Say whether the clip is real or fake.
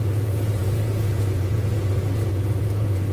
fake